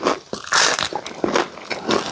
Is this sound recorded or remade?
recorded